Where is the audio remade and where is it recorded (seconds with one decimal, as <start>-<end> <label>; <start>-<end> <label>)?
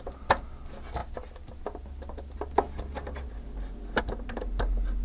0.0-5.0 recorded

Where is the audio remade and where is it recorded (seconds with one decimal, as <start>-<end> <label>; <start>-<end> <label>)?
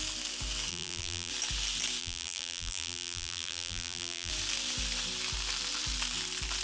0.0-0.7 recorded; 0.7-1.3 remade; 1.3-2.0 recorded; 2.0-4.3 remade; 4.3-6.6 recorded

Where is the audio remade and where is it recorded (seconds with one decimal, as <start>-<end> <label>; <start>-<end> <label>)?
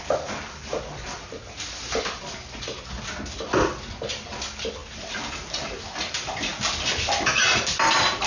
0.0-8.3 recorded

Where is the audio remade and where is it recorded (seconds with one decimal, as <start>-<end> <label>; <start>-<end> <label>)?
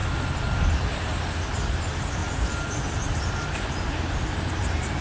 0.0-0.7 recorded; 0.7-1.1 remade; 1.1-1.6 recorded; 1.6-2.2 remade; 2.2-4.6 recorded; 4.6-5.0 remade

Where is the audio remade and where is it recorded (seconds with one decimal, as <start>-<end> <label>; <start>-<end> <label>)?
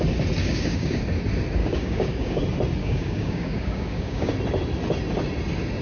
0.0-0.4 recorded; 0.4-1.0 remade; 1.0-1.6 recorded; 1.6-2.4 remade; 2.4-2.8 recorded; 2.8-4.3 remade; 4.3-5.8 recorded